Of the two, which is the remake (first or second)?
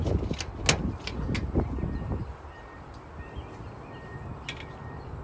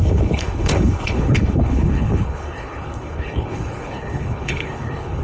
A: second